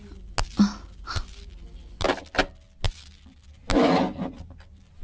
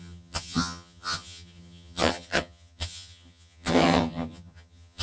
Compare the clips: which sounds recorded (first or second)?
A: first